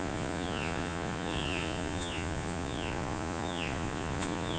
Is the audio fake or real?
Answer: fake